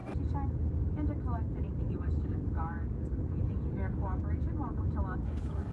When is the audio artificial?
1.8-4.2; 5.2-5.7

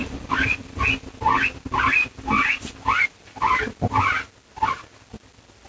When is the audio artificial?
none